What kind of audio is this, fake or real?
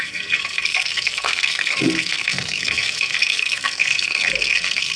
fake